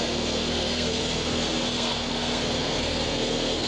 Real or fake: fake